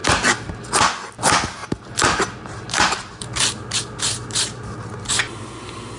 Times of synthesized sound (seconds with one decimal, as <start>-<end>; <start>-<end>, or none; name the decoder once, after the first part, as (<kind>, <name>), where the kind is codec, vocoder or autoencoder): 0.0-0.6 (vocoder, BigVGAN v2); 1.6-5.2